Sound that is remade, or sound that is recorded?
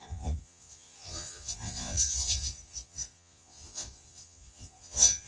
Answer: remade